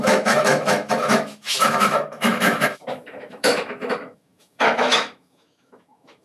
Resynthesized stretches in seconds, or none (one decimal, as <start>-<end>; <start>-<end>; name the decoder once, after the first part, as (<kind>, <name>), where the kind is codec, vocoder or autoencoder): 0.0-6.2 (autoencoder, DAC-VAE)